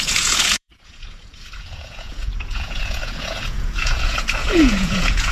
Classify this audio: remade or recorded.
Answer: remade